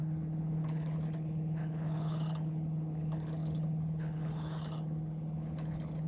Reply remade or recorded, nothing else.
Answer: remade